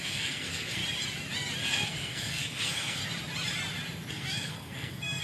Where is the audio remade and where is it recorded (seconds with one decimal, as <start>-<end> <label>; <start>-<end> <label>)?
0.0-0.8 remade; 0.8-1.6 recorded; 1.6-3.0 remade; 3.0-4.1 recorded; 4.1-5.2 remade